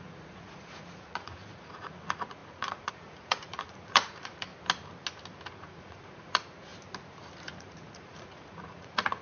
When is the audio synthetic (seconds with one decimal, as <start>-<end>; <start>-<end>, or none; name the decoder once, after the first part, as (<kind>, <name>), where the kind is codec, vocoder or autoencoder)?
0.0-4.5 (vocoder, Vocos); 5.5-6.7; 7.6-9.2